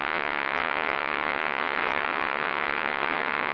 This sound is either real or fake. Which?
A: fake